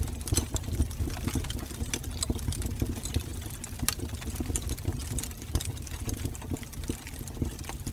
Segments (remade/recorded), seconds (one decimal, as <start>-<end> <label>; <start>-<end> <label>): 0.0-7.9 recorded